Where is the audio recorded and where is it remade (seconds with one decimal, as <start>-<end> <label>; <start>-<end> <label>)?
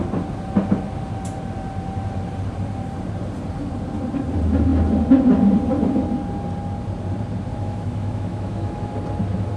0.0-7.5 recorded; 7.5-9.0 remade; 9.0-9.6 recorded